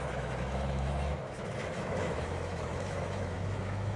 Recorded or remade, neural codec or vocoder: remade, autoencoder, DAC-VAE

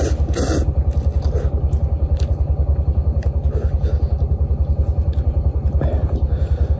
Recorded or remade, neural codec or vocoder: recorded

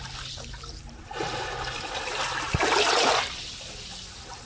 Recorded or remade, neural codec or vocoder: recorded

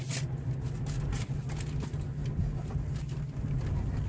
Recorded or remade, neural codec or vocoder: recorded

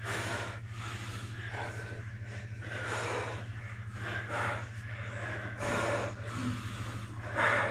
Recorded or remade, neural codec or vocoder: remade, autoencoder, DAC-VAE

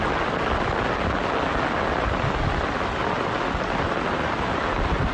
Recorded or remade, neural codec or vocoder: recorded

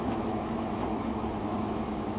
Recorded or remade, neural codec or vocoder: remade, autoencoder, DAC-VAE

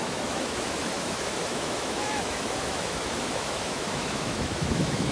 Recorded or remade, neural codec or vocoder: remade, autoencoder, DAC-VAE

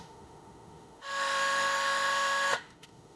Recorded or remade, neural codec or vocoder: remade, autoencoder, DAC-VAE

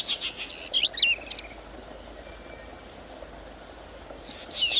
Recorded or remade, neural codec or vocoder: recorded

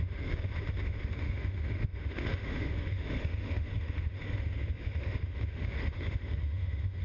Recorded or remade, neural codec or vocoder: remade, autoencoder, DAC-VAE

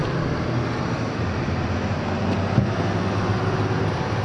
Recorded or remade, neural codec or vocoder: recorded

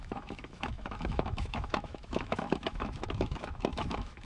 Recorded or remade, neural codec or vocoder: remade, autoencoder, DAC-VAE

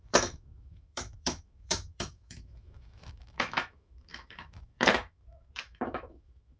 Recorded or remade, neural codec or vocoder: remade, autoencoder, DAC-VAE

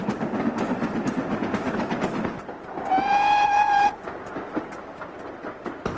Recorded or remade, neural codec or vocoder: recorded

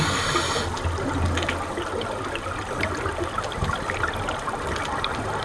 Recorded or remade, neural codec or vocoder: recorded